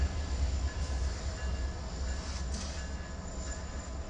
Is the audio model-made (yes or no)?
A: no